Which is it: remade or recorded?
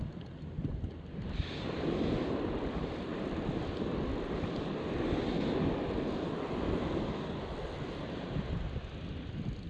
recorded